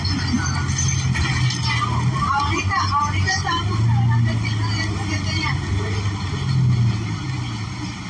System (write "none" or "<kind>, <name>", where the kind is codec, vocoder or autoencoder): none